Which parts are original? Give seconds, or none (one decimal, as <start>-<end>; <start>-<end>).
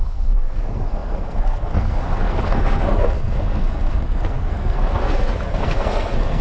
none